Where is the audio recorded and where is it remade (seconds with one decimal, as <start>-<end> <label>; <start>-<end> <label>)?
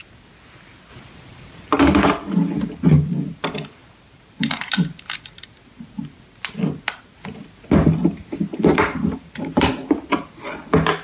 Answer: 0.0-0.9 recorded; 0.9-1.8 remade; 1.8-3.8 recorded; 3.8-4.7 remade; 4.7-8.5 recorded; 8.5-9.7 remade; 9.7-11.0 recorded